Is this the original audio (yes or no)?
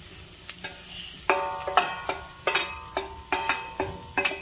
yes